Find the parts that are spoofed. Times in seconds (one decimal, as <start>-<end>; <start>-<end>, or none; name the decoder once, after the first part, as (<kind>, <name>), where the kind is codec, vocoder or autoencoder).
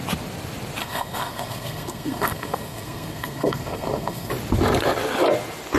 0.8-4.3 (codec, SNAC)